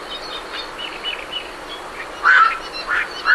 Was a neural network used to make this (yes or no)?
no